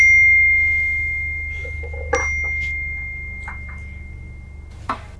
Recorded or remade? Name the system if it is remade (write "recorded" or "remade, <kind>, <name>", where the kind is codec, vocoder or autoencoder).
recorded